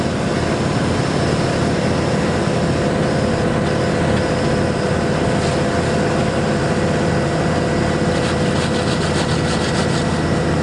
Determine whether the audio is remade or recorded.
recorded